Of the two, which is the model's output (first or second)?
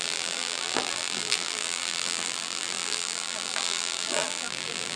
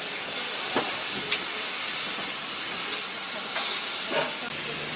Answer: first